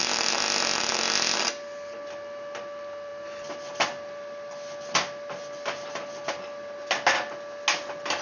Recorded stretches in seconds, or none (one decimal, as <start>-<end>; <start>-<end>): 0.0-8.2